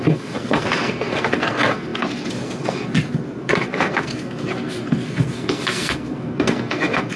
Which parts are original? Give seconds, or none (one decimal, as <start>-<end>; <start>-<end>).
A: none